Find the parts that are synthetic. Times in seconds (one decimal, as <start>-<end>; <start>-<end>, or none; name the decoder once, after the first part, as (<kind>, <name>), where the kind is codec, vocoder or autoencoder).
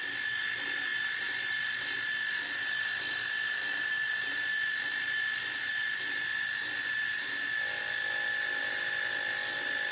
0.0-9.9 (vocoder, BigVGAN v2)